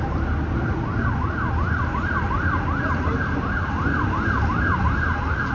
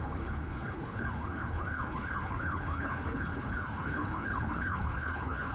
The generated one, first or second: second